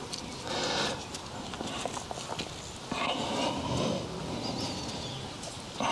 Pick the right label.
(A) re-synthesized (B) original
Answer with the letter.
B